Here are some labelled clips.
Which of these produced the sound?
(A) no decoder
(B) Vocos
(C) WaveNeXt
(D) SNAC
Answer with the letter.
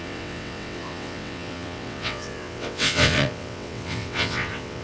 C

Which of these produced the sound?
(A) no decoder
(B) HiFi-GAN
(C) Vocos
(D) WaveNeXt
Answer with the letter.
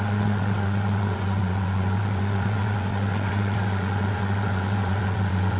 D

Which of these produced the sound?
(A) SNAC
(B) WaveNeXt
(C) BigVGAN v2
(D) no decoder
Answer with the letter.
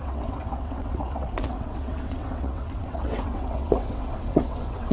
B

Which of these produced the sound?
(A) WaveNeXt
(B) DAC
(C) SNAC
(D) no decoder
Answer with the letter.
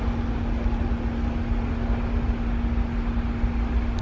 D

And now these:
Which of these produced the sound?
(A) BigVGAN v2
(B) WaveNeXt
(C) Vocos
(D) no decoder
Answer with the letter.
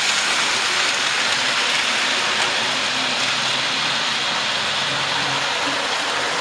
D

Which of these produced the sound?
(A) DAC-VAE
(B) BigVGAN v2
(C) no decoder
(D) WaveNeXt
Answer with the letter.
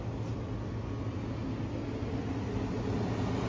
C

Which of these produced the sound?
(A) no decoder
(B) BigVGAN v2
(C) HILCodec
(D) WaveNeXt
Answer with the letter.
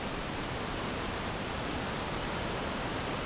A